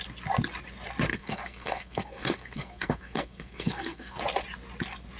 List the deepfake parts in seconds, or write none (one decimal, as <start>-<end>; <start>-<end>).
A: 1.1-4.2